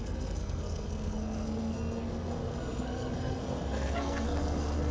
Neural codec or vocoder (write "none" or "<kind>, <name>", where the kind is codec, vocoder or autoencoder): codec, SNAC